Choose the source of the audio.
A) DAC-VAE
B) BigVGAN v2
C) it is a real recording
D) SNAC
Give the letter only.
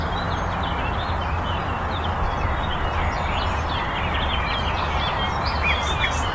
C